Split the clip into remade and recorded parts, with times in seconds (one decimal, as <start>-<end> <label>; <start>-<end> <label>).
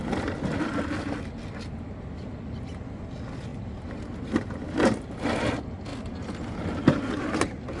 0.0-3.5 recorded; 3.5-4.3 remade; 4.3-7.8 recorded